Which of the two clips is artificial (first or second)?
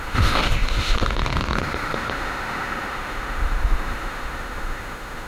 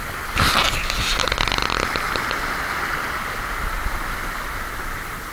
first